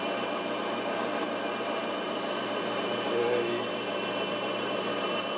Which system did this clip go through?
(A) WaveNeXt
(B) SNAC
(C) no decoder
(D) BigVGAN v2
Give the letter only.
D